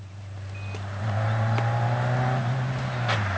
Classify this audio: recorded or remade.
recorded